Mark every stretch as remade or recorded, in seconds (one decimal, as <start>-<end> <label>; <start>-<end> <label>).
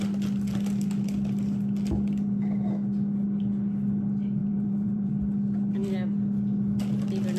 0.0-4.4 recorded; 4.4-5.1 remade; 5.1-7.4 recorded